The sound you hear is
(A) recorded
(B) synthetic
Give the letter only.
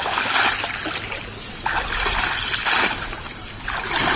A